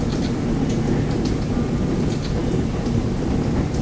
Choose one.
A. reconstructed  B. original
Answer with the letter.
B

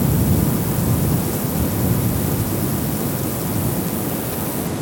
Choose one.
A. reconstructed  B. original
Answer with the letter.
B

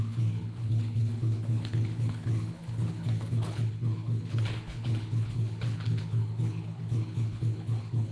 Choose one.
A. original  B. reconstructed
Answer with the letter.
B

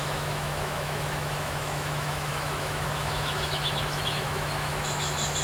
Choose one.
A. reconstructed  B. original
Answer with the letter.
A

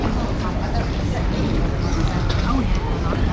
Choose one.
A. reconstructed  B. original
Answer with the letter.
B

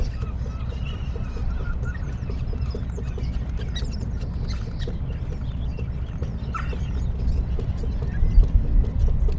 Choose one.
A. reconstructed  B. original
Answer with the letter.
B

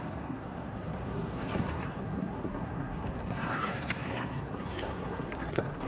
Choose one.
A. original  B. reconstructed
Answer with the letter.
B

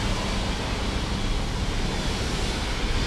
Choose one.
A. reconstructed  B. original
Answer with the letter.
B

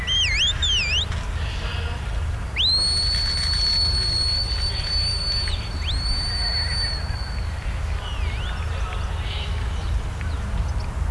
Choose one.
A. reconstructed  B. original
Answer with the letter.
B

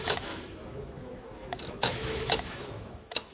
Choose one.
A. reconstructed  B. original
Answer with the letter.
A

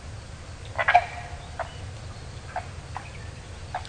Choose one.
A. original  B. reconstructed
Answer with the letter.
A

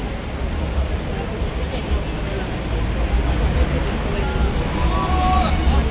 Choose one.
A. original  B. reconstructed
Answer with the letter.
A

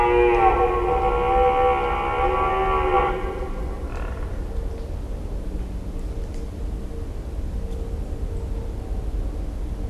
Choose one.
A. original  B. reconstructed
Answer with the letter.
A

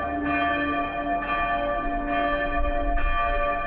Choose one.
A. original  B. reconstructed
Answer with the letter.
A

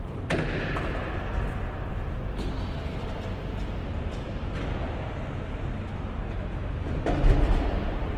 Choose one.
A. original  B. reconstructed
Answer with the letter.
A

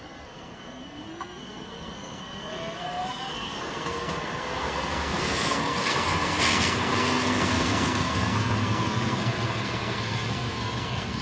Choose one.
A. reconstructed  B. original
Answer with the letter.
A